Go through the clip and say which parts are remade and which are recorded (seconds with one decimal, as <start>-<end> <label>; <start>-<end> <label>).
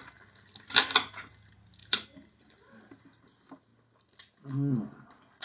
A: 0.0-5.4 recorded